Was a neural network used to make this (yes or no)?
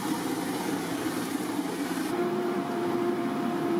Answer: yes